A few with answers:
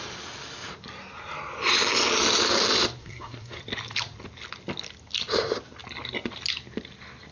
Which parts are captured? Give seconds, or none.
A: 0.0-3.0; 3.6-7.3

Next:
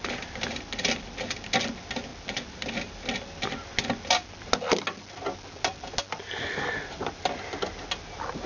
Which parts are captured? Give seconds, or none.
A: 0.0-8.5

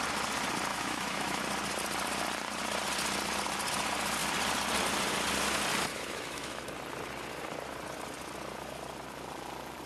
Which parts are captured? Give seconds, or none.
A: 0.0-0.7; 1.4-5.9; 6.6-9.9

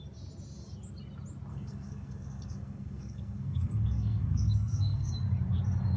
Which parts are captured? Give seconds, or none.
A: 0.0-1.5; 5.1-6.0

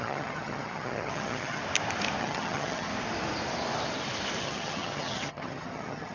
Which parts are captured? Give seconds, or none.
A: 1.6-2.2; 2.9-4.4

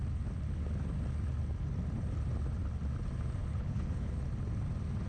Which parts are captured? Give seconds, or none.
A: 0.0-3.4; 4.2-5.1